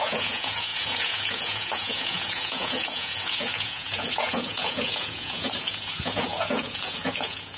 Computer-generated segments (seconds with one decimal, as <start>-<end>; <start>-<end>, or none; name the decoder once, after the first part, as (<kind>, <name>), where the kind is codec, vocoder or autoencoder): 0.0-7.6 (vocoder, Vocos)